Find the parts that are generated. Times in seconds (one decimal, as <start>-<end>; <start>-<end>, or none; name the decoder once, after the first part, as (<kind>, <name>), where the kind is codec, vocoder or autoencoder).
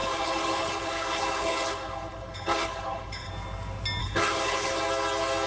0.0-3.3 (codec, HILCodec); 4.0-4.8